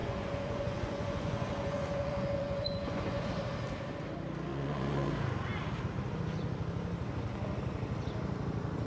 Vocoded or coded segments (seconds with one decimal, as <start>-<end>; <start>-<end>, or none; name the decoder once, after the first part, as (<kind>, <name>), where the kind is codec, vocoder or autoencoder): 0.0-3.3 (vocoder, Vocos); 4.5-5.1